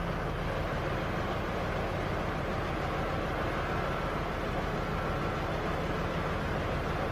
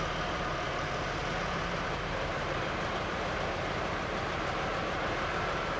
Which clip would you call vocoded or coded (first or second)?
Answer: second